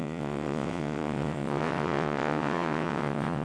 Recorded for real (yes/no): no